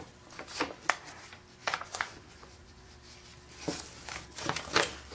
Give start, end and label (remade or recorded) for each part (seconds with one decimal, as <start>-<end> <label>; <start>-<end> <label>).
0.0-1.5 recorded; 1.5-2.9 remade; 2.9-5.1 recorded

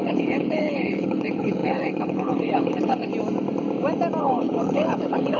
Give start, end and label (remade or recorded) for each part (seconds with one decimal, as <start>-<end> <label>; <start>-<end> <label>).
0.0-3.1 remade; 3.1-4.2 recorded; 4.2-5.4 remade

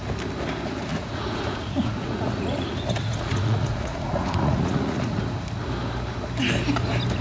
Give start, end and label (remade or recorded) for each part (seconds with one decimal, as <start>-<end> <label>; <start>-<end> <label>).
0.0-0.9 recorded; 0.9-5.2 remade; 5.2-7.2 recorded

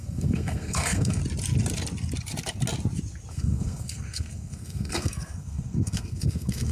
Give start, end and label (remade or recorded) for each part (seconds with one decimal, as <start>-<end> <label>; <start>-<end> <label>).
0.0-1.2 remade; 1.2-3.3 recorded; 3.3-6.7 remade